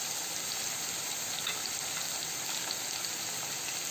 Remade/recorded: recorded